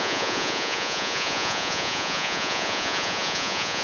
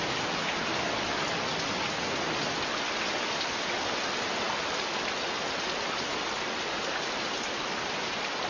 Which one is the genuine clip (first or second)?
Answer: second